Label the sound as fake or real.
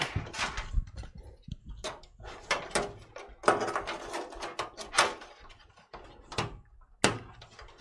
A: real